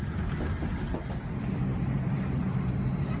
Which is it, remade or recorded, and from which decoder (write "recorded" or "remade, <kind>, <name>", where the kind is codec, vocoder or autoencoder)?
recorded